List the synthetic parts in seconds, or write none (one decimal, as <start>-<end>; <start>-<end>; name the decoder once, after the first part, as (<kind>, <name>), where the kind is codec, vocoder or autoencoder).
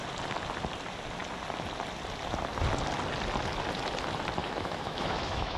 4.4-5.6 (autoencoder, DAC-VAE)